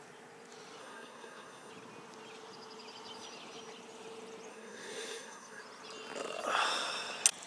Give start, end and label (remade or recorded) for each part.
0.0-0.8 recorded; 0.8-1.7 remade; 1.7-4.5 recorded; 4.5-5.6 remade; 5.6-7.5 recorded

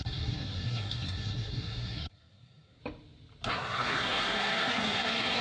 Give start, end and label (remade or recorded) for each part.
0.0-2.8 remade; 2.8-3.5 recorded; 3.5-5.4 remade

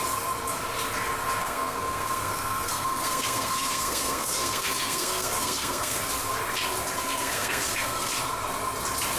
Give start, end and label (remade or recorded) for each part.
0.0-1.4 recorded; 1.4-6.0 remade; 6.0-7.0 recorded; 7.0-8.1 remade; 8.1-9.2 recorded

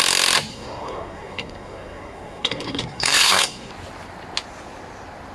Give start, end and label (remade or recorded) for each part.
0.0-0.5 recorded; 0.5-3.7 remade; 3.7-5.3 recorded

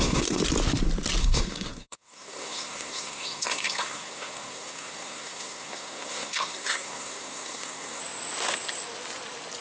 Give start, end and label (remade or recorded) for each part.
0.0-0.4 remade; 0.4-1.2 recorded; 1.2-8.0 remade; 8.0-9.6 recorded

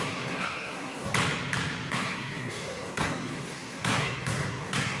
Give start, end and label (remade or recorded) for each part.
0.0-1.1 remade; 1.1-1.9 recorded; 1.9-5.0 remade

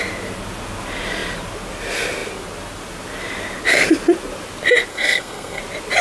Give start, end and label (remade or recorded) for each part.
0.0-4.9 recorded; 4.9-5.6 remade; 5.6-6.0 recorded

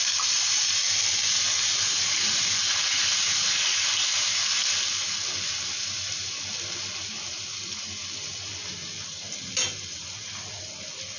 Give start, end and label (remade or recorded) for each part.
0.0-11.2 recorded